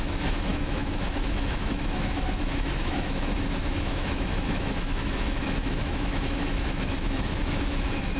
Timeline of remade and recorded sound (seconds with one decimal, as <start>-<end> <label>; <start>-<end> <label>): 0.0-8.2 remade